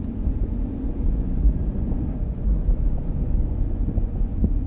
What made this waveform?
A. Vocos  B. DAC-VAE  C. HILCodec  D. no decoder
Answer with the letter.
A